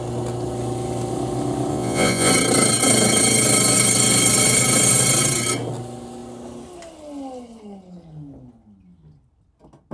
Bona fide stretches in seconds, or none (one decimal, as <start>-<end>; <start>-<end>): 0.0-1.7; 2.3-9.9

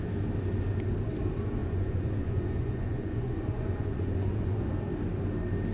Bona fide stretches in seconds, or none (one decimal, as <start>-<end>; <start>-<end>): 0.0-1.6; 4.7-5.7

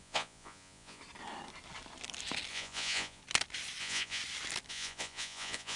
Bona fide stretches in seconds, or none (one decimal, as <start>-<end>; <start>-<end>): 1.0-2.5; 3.2-3.8; 4.2-4.7

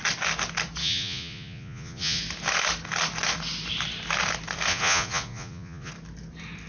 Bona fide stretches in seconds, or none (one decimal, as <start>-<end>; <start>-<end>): 0.0-0.8; 2.2-4.7; 5.9-6.7